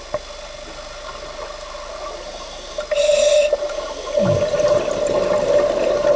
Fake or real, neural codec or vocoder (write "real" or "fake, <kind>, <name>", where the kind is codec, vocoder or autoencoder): real